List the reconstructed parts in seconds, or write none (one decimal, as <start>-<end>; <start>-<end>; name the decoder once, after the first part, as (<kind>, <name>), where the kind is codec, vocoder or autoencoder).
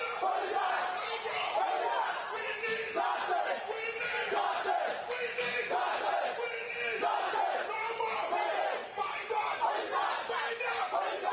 8.8-9.7 (vocoder, WaveNeXt)